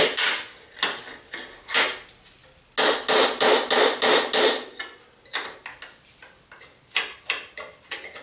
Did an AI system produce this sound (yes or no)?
no